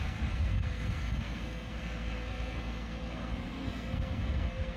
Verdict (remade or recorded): remade